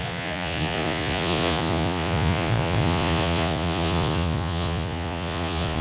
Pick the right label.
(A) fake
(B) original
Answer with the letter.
A